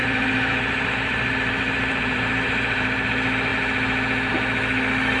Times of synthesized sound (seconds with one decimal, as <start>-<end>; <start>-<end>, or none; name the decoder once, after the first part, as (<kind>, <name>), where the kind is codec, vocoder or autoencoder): 0.0-3.1 (vocoder, BigVGAN v2)